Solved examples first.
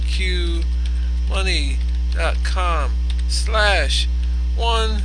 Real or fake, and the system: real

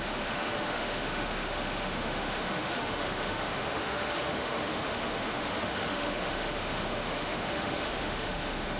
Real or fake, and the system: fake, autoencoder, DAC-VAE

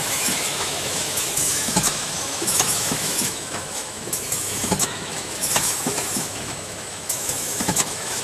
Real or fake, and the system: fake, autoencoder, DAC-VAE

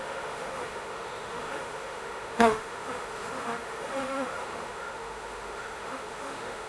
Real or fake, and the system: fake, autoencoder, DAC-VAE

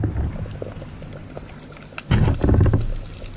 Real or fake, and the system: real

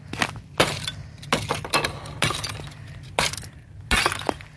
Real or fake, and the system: real